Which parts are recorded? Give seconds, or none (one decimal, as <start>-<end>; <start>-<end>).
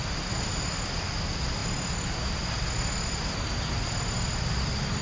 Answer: 0.0-5.0